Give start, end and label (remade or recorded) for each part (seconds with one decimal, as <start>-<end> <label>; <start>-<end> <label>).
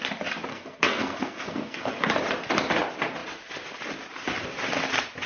0.0-0.5 recorded; 0.5-2.0 remade; 2.0-5.3 recorded